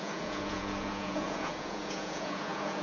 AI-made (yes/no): yes